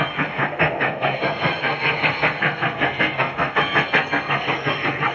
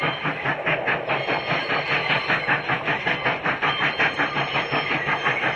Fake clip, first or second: first